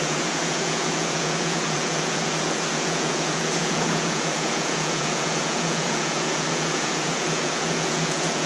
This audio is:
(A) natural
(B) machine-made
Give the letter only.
B